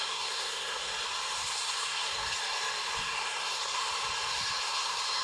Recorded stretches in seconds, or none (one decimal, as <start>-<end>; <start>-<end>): 0.9-1.5; 2.4-3.0; 3.8-4.6